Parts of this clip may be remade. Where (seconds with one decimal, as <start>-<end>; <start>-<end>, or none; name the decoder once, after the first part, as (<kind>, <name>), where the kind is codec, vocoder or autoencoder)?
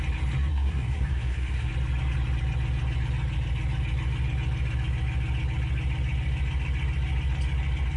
0.5-1.7 (codec, SNAC)